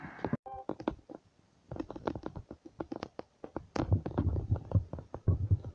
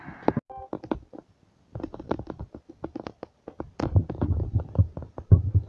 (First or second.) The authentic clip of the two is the second